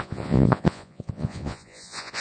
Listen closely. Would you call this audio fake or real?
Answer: fake